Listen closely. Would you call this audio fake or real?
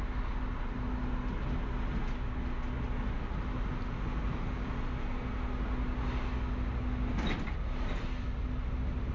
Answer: real